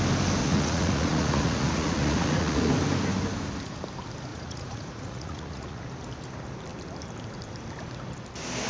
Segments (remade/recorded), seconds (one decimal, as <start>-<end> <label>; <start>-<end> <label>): 0.0-0.4 recorded; 0.4-2.7 remade; 2.7-4.3 recorded; 4.3-5.8 remade; 5.8-8.7 recorded